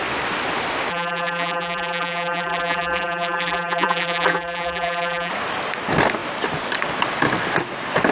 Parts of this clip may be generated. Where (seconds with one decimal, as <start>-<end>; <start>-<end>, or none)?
0.9-5.3

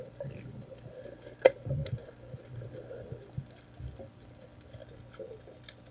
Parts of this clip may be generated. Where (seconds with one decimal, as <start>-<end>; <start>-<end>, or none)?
4.8-5.9

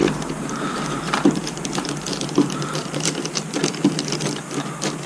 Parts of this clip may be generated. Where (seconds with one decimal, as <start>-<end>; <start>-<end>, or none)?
0.0-3.1

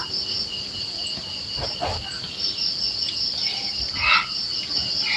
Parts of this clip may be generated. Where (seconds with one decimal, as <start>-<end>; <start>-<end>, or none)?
none

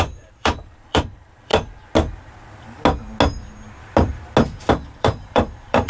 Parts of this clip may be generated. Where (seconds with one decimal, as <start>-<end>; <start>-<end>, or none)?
0.0-1.5; 4.7-5.9

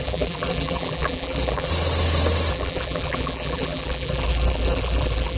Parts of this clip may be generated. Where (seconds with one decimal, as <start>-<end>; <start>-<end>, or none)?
0.0-1.7; 2.5-5.4

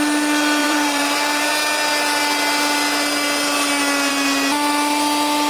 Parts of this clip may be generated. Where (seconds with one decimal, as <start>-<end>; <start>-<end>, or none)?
0.6-1.5

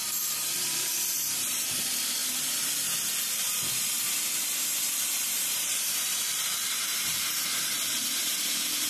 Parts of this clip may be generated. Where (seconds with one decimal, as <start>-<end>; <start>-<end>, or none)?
0.0-2.2; 3.2-8.9